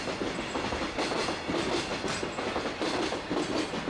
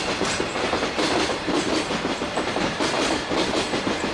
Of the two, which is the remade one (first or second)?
second